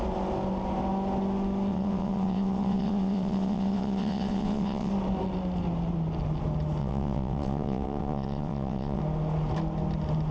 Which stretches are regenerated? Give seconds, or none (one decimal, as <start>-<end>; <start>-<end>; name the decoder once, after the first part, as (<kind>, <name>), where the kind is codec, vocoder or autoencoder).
1.7-4.9 (vocoder, WaveNeXt); 6.8-9.0